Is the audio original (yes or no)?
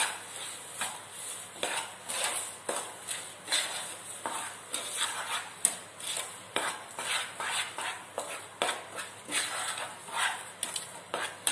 yes